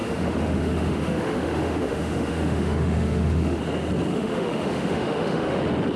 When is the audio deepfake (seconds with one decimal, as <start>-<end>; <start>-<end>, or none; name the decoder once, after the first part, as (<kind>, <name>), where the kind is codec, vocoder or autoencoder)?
0.0-3.6 (autoencoder, DAC-VAE); 4.1-5.6